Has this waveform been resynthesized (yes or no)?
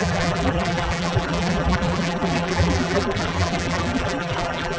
yes